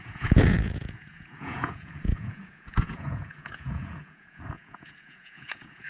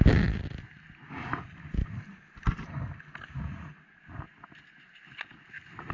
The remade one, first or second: first